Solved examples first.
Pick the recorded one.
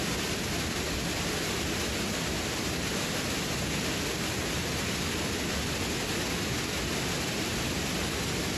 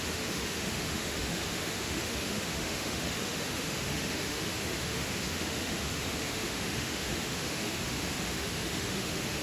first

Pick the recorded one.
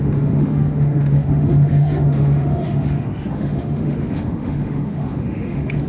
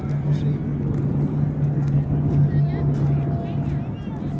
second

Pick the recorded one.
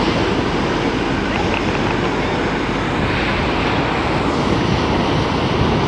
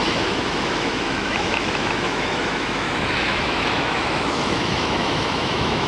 first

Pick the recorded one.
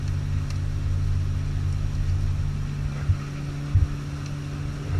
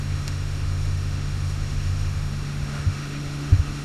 first